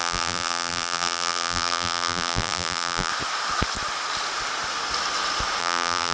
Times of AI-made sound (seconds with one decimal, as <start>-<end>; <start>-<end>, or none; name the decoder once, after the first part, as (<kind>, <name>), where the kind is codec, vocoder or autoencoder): 0.0-3.1 (vocoder, BigVGAN v2); 5.6-6.1

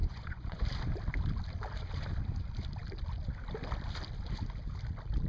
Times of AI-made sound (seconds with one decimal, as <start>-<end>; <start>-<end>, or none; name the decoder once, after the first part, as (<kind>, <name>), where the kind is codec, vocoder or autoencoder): 0.0-0.6 (vocoder, Vocos)

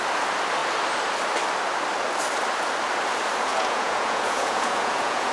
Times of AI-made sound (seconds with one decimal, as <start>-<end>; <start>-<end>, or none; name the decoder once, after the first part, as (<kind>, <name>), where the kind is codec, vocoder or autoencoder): 3.5-5.3 (vocoder, Vocos)

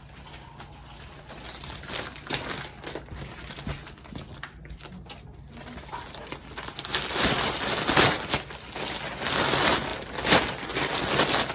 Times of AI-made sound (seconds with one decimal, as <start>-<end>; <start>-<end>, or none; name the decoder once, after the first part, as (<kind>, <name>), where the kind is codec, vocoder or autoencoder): none

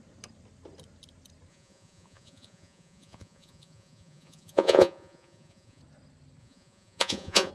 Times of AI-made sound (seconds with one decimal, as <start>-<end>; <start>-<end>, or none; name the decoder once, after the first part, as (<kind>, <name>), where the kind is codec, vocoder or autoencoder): 1.5-5.8 (vocoder, Vocos); 6.4-7.5

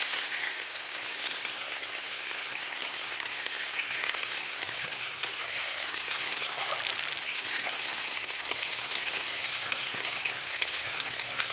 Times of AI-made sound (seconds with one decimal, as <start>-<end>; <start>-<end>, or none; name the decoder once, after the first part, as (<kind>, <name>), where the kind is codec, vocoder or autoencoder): 0.0-6.7 (codec, SNAC); 7.2-11.5

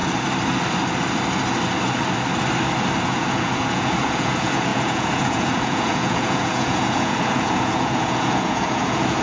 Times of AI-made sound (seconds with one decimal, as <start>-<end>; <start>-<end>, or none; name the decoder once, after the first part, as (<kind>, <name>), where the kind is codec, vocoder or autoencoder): 3.0-9.2 (vocoder, Vocos)